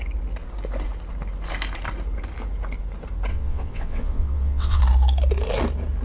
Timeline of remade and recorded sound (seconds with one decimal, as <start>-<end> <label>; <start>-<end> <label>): 0.0-3.3 recorded; 3.3-4.8 remade; 4.8-6.0 recorded

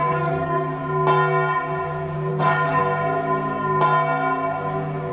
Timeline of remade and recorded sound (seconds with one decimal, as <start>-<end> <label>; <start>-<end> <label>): 0.0-0.8 remade; 0.8-2.3 recorded; 2.3-2.8 remade; 2.8-5.1 recorded

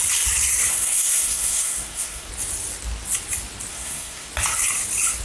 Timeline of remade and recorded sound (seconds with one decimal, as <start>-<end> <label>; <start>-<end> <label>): 0.0-0.7 recorded; 0.7-2.3 remade; 2.3-3.7 recorded; 3.7-4.3 remade; 4.3-5.2 recorded

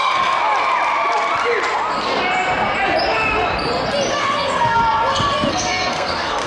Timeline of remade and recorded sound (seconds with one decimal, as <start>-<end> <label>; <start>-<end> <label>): 0.0-0.4 remade; 0.4-4.1 recorded; 4.1-4.8 remade; 4.8-5.5 recorded; 5.5-6.5 remade